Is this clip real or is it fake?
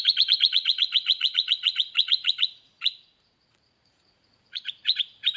fake